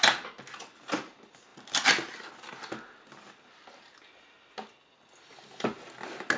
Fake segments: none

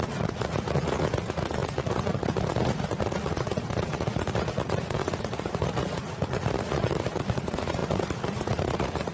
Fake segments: 0.0-9.1 (vocoder, Vocos)

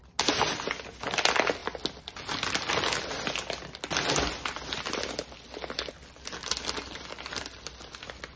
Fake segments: none

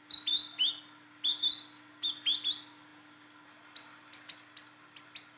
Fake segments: none